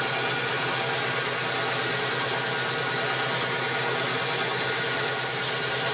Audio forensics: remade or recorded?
recorded